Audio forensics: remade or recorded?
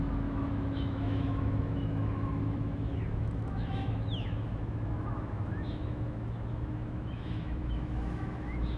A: remade